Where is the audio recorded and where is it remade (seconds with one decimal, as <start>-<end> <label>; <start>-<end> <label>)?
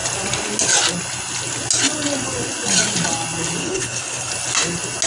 0.0-3.6 recorded; 3.6-4.3 remade; 4.3-5.1 recorded